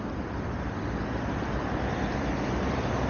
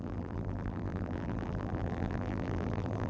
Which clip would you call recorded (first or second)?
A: first